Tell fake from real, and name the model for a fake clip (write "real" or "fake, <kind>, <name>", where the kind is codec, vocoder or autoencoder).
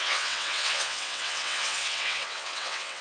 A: fake, vocoder, WaveNeXt